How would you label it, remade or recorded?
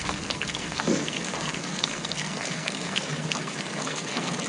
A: remade